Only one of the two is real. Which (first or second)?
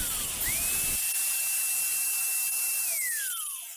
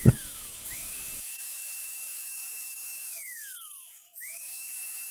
first